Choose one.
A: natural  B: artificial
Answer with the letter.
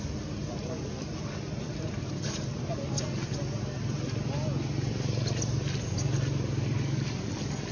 A